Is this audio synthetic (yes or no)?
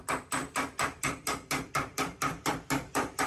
yes